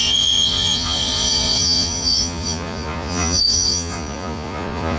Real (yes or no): no